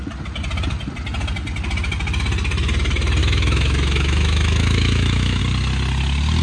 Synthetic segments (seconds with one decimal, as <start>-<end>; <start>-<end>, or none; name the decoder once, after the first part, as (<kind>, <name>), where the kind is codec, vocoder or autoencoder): 3.2-5.4 (autoencoder, DAC-VAE)